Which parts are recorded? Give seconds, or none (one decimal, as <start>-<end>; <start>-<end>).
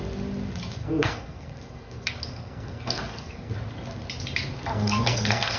0.0-0.8; 3.5-4.7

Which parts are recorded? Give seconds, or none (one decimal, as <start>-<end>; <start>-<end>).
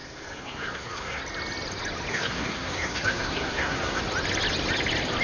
1.2-2.1; 4.0-5.2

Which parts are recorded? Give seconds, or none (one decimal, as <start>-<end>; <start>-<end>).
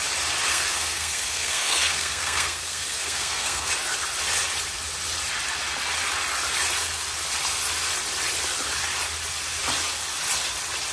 0.0-0.5; 3.7-10.9